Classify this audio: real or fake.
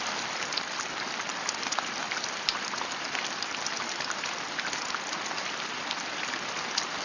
real